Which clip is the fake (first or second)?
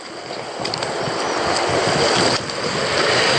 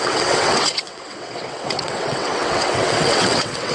second